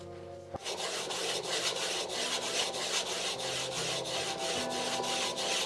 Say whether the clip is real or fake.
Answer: real